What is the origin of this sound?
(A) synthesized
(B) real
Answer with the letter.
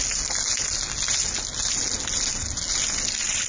B